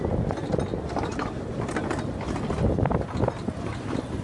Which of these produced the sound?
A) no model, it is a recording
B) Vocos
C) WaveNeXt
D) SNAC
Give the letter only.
A